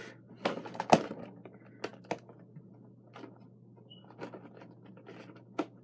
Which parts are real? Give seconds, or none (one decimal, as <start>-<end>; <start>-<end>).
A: 0.0-5.8